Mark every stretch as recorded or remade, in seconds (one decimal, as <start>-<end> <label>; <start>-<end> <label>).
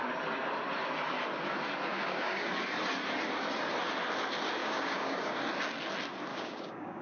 0.0-1.9 recorded; 1.9-2.5 remade; 2.5-4.6 recorded; 4.6-5.4 remade; 5.4-6.3 recorded; 6.3-7.0 remade